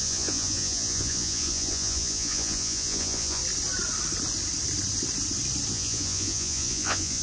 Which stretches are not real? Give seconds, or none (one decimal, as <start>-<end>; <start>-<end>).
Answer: 0.0-3.4; 5.7-7.2

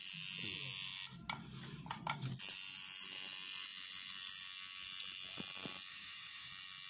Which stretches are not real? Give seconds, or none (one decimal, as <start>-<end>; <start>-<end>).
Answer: 5.9-6.5

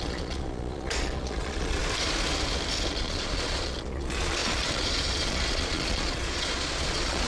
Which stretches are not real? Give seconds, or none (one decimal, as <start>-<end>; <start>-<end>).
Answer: 0.0-1.8; 2.9-7.3

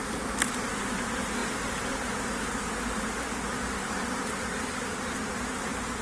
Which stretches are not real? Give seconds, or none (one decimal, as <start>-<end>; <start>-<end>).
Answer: none

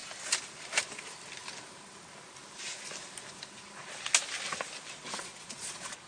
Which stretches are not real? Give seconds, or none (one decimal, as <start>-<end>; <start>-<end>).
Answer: 5.2-6.1